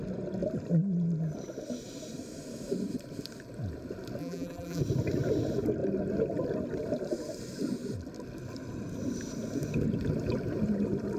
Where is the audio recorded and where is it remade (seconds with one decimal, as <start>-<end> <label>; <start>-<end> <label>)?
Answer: 0.0-4.2 recorded; 4.2-4.8 remade; 4.8-11.2 recorded